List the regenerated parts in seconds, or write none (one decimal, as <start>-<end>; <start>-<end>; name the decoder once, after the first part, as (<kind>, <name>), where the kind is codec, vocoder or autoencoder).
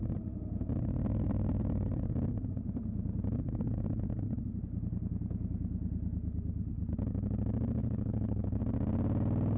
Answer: 7.8-8.6 (codec, HILCodec)